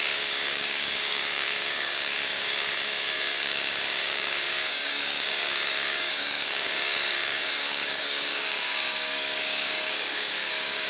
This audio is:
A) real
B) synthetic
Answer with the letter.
B